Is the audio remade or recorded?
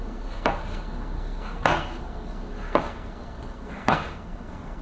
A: remade